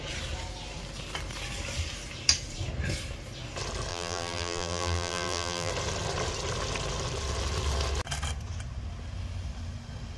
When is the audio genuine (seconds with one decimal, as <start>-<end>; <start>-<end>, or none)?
0.0-3.9; 5.7-10.2